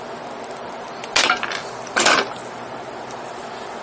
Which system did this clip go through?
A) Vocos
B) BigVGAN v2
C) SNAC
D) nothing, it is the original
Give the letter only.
D